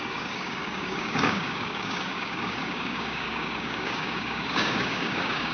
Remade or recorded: remade